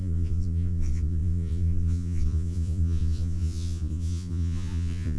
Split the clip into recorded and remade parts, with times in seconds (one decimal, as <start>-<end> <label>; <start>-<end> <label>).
0.0-5.2 remade